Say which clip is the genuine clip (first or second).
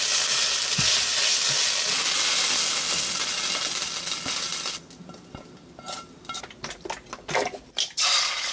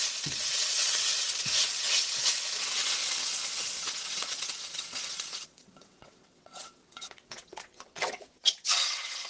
first